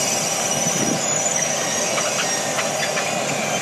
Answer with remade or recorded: recorded